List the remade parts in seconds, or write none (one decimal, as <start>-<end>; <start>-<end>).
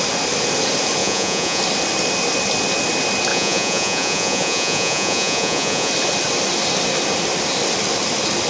1.0-1.6; 3.3-5.9